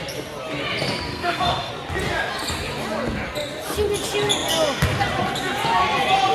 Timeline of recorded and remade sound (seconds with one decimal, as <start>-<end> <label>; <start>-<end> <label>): 0.0-1.1 recorded; 1.1-1.7 remade; 1.7-6.3 recorded

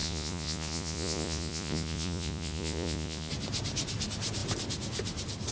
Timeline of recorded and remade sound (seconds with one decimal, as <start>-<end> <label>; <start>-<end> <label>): 0.0-3.3 remade; 3.3-5.5 recorded